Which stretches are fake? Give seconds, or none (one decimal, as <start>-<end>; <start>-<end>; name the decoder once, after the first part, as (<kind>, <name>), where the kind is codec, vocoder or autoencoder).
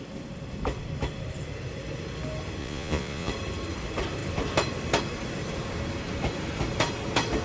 2.6-3.3 (vocoder, Vocos)